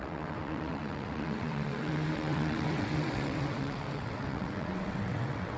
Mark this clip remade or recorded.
remade